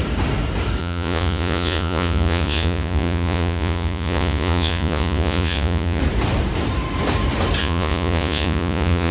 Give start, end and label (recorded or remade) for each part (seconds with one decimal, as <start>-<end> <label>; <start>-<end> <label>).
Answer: 0.0-0.8 recorded; 0.8-6.0 remade; 6.0-7.6 recorded; 7.6-9.1 remade